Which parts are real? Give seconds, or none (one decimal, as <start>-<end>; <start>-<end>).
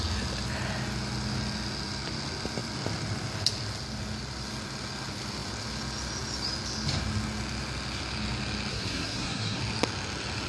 0.0-8.7; 9.6-10.5